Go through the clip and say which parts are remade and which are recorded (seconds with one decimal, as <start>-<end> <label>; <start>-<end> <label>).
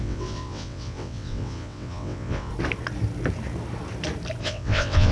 0.0-2.5 remade; 2.5-4.4 recorded; 4.4-5.1 remade